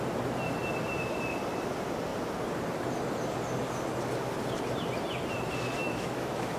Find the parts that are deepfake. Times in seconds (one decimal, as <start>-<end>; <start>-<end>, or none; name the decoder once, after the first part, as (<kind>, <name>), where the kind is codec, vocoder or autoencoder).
5.8-6.6 (autoencoder, DAC-VAE)